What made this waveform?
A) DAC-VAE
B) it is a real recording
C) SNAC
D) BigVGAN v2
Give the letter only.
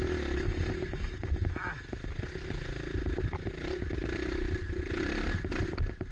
B